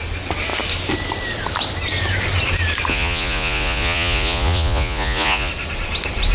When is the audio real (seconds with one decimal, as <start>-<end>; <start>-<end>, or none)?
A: 0.0-2.9; 5.5-6.3